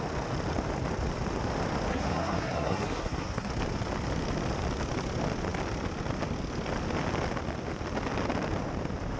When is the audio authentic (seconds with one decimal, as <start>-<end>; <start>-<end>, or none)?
0.0-1.9; 3.5-9.2